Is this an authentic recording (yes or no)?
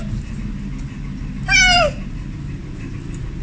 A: yes